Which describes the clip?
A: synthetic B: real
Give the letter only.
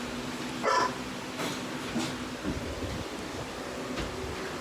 B